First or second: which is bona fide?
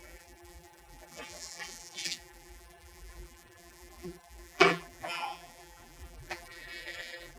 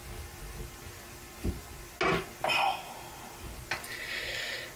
second